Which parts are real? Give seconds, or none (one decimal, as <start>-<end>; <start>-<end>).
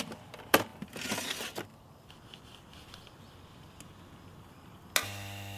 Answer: 0.0-5.6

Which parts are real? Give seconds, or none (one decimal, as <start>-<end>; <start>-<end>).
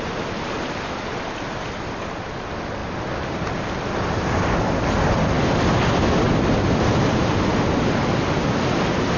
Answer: 0.0-9.2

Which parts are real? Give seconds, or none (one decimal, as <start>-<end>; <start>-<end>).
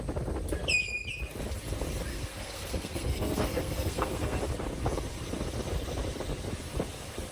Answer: 0.0-2.1; 4.4-7.3